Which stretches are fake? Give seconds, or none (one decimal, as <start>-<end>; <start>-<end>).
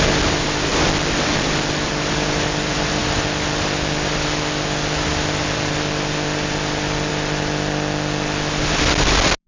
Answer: 0.7-1.9